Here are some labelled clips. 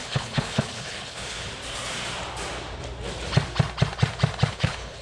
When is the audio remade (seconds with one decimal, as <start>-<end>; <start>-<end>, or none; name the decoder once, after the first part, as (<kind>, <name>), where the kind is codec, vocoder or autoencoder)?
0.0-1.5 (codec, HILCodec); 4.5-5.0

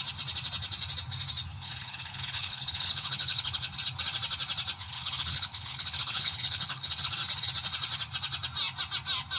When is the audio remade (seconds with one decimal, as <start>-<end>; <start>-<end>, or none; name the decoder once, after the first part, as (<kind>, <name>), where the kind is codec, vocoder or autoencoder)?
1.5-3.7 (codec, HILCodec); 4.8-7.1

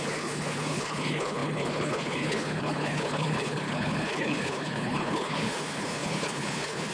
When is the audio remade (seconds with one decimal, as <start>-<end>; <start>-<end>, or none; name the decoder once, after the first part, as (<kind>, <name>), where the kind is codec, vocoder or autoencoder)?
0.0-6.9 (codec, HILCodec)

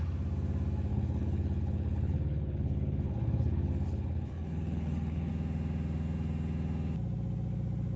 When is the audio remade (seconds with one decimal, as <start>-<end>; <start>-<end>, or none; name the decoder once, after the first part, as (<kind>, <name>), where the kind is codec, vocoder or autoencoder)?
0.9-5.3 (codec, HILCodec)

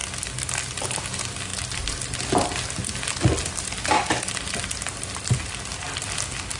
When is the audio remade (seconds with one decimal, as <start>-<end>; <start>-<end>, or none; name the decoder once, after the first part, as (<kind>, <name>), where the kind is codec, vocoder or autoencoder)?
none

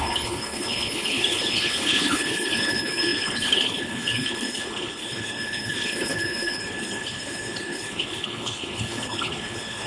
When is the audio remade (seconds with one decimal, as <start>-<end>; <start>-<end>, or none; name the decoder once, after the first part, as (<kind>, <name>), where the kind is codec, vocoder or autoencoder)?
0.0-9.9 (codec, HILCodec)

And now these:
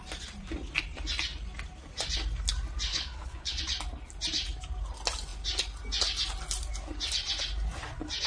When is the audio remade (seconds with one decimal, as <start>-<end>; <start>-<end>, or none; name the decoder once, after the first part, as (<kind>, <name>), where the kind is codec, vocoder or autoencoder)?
2.9-3.6 (codec, HILCodec)